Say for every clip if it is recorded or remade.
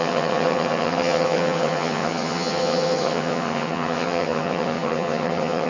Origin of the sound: remade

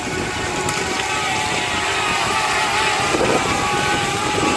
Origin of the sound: remade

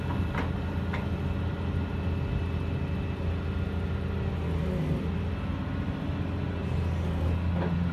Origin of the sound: recorded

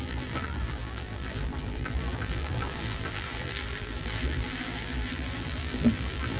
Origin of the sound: remade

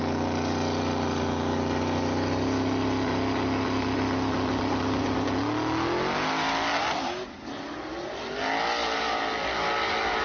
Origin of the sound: recorded